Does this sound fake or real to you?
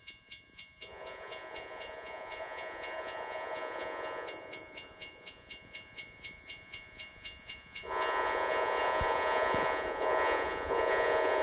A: fake